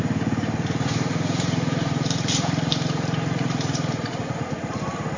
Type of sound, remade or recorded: remade